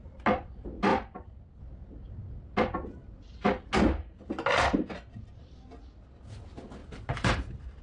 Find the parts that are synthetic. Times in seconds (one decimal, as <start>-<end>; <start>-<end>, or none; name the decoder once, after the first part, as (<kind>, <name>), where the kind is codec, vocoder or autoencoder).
3.0-3.7 (vocoder, BigVGAN v2); 6.8-7.8